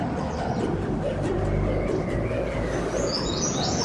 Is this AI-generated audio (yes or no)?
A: no